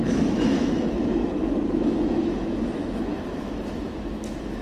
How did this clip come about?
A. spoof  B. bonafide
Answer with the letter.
A